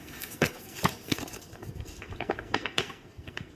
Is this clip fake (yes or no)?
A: yes